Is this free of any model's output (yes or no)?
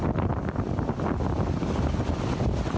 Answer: yes